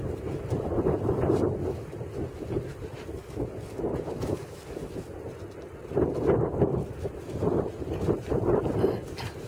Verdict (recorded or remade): recorded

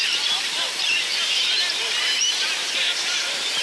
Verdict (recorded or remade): remade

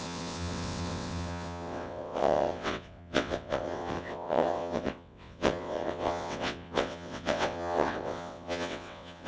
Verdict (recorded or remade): remade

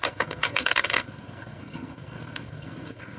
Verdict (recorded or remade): remade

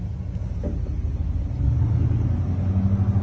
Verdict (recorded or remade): recorded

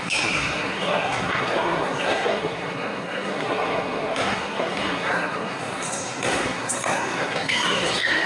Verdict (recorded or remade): remade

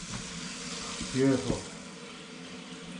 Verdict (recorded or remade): recorded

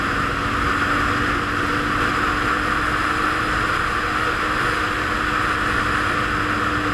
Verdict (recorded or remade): recorded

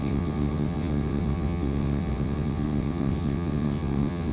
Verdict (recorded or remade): remade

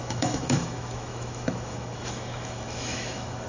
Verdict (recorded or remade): remade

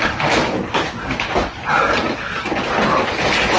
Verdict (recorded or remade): recorded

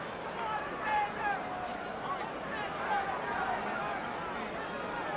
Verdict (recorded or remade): recorded